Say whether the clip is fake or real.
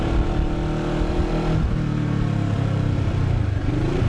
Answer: real